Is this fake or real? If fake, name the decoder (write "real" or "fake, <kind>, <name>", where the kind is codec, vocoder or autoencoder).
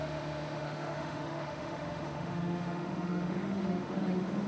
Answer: fake, autoencoder, DAC-VAE